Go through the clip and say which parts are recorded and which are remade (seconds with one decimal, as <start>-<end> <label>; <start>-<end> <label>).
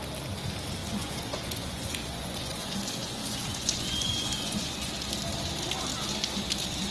0.0-0.8 recorded; 0.8-4.9 remade; 4.9-6.9 recorded